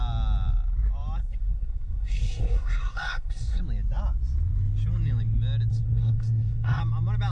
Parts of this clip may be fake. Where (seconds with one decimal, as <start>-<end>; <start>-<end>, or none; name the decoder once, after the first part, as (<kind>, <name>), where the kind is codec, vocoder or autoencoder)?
1.2-3.6 (codec, SNAC); 5.7-6.8